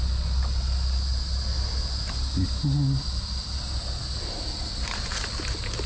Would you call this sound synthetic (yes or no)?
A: no